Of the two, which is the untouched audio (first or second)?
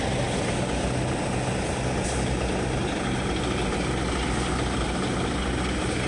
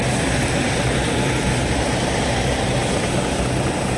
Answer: first